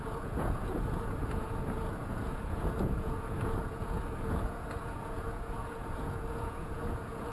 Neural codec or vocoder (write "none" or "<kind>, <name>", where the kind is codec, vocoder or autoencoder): vocoder, Vocos